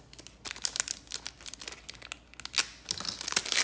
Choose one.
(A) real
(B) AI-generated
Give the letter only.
A